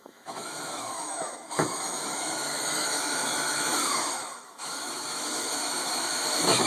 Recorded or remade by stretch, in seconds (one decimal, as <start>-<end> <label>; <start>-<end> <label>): 0.0-6.7 remade